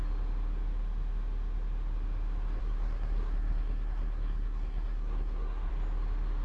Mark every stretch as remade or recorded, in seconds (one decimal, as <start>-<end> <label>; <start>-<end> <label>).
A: 0.0-2.6 recorded; 2.6-5.7 remade; 5.7-6.4 recorded